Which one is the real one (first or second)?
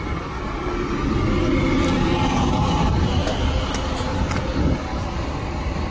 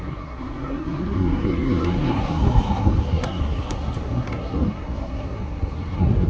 first